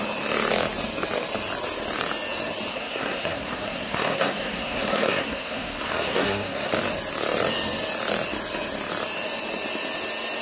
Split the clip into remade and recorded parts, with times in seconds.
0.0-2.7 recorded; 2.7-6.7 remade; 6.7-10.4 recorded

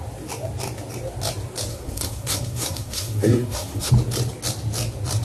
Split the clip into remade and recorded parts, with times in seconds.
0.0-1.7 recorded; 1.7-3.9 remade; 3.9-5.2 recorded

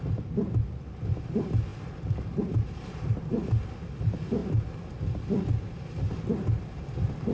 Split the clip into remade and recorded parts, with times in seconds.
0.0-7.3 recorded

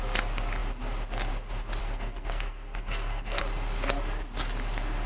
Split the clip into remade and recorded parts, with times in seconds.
0.0-1.8 recorded; 1.8-3.4 remade; 3.4-5.1 recorded

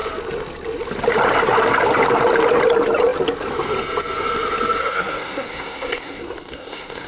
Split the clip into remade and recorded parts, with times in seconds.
0.0-4.8 recorded; 4.8-7.1 remade